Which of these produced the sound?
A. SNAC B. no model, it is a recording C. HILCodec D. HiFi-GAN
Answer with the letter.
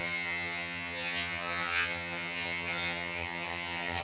D